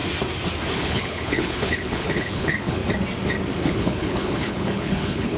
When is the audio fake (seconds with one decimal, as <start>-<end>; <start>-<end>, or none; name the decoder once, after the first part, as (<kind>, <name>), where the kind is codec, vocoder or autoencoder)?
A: 0.8-2.8 (codec, HILCodec); 3.7-5.4